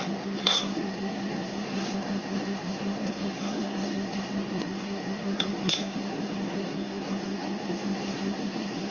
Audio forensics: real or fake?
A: fake